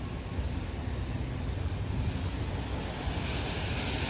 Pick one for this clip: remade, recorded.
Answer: recorded